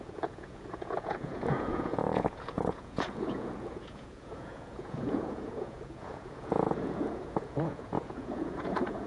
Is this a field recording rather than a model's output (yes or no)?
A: no